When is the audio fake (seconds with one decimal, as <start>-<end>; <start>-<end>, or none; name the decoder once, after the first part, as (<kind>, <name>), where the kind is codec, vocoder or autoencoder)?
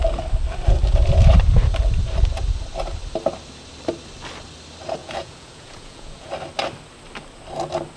5.0-6.3 (vocoder, Vocos)